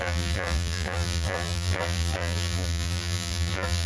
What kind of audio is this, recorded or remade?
remade